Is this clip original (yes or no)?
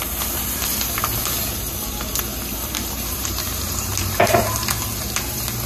no